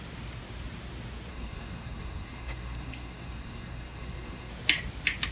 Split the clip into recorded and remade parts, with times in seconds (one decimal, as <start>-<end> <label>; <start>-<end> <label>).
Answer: 0.0-1.3 recorded; 1.3-4.5 remade; 4.5-5.3 recorded